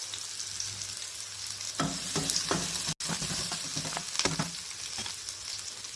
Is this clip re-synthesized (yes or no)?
no